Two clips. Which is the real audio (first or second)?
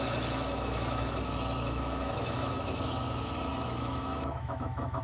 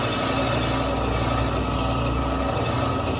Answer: second